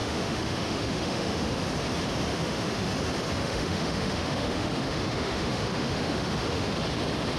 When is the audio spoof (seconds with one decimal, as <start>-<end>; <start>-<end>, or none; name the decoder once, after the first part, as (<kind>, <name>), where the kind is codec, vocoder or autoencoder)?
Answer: 0.0-1.6 (autoencoder, DAC-VAE); 2.3-2.9; 3.4-6.8

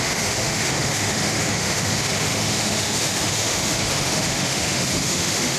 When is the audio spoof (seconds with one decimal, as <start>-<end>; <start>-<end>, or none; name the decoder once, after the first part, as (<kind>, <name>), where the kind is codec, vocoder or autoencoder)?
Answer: 0.0-5.6 (autoencoder, DAC-VAE)